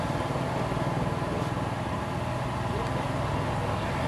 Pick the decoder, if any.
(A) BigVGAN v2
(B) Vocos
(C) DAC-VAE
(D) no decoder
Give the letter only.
D